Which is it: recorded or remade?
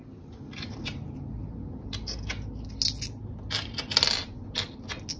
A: recorded